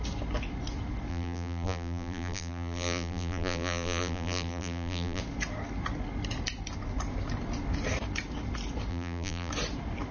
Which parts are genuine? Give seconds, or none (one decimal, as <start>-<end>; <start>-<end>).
0.0-1.1; 5.2-8.9; 9.5-10.1